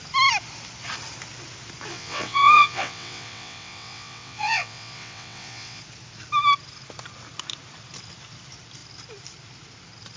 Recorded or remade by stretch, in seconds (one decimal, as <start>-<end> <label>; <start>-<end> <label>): 0.0-1.9 recorded; 1.9-5.8 remade; 5.8-10.2 recorded